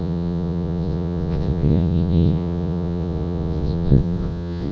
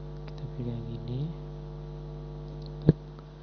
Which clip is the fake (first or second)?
first